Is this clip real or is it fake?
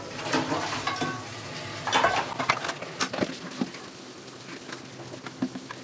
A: real